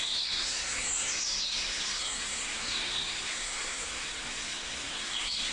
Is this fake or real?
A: fake